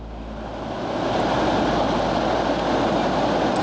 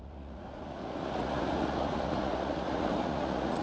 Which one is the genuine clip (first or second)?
first